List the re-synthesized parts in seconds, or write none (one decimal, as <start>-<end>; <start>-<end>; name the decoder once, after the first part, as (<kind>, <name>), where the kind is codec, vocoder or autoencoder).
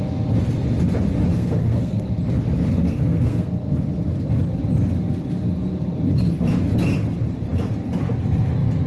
1.3-2.1 (codec, SNAC); 2.7-3.5